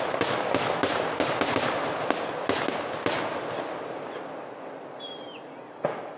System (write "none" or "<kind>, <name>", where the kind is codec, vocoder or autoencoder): none